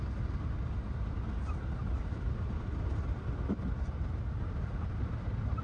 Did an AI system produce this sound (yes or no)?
no